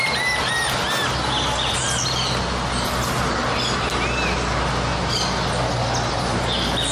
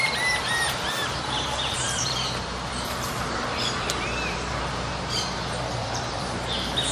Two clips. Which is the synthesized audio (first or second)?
second